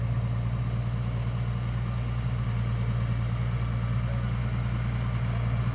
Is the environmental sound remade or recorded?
recorded